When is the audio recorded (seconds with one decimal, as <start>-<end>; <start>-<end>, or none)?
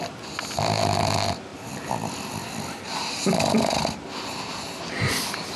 0.0-5.6